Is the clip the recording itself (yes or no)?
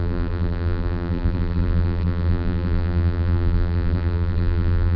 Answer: no